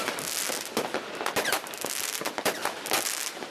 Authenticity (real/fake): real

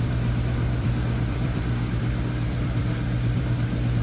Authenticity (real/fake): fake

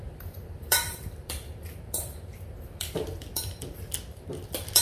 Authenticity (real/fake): fake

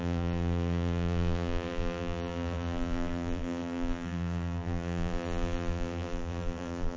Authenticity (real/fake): fake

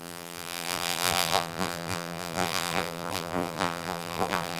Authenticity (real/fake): fake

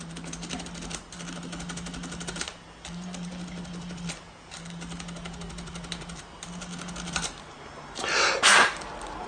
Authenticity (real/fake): real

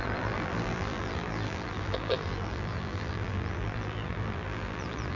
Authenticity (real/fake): fake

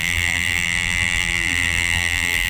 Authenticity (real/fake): fake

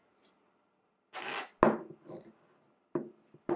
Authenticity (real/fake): real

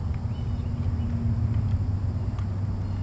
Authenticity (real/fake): real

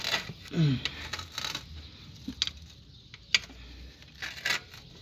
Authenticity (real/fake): real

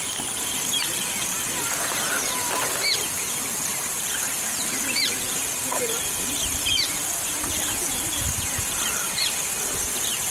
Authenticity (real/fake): fake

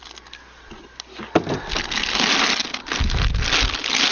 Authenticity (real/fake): real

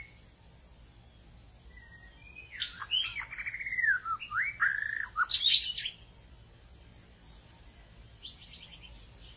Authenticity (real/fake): real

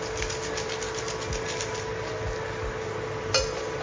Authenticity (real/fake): real